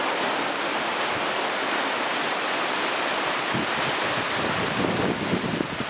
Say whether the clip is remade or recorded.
recorded